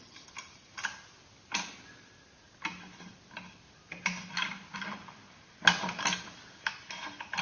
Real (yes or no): yes